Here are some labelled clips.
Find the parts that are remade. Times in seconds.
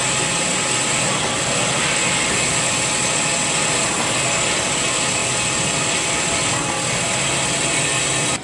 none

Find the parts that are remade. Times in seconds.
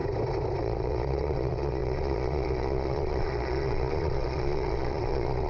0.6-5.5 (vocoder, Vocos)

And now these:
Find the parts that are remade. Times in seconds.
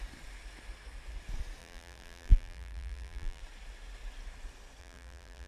1.6-3.4 (vocoder, BigVGAN v2); 4.8-5.5